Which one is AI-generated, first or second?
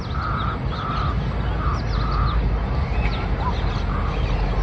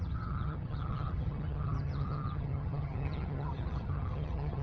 second